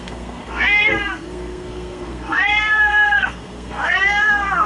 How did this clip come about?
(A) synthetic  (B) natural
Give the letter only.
A